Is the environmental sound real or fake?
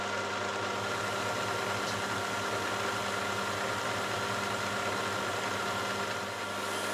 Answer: real